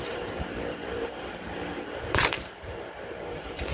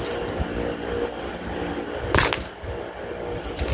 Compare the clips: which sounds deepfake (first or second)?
first